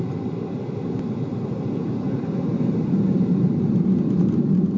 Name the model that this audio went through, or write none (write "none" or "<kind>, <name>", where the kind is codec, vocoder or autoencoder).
none